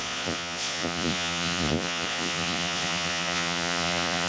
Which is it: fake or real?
fake